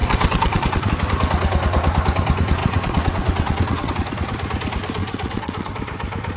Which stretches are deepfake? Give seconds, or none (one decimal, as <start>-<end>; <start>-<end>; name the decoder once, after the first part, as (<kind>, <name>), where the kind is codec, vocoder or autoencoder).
0.0-0.9 (vocoder, WaveNeXt); 2.6-3.9; 5.0-5.7